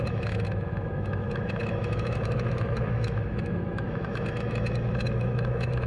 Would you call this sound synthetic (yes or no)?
yes